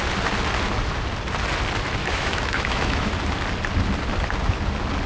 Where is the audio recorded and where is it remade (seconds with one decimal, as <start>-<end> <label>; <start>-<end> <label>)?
0.0-2.0 recorded; 2.0-3.1 remade; 3.1-5.1 recorded